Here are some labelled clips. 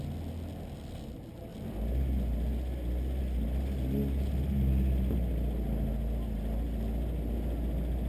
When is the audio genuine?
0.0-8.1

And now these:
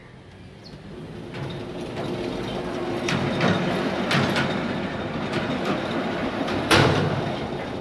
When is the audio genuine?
0.0-4.7